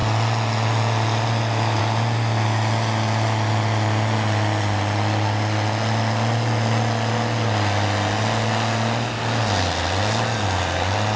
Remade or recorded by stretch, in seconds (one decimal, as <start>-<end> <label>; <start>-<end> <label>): 0.0-11.2 recorded